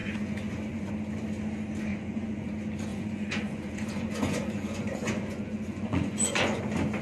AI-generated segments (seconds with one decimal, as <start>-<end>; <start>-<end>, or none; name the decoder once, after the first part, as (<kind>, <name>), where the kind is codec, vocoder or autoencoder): 0.0-0.9 (vocoder, Vocos); 1.9-2.5; 2.9-6.6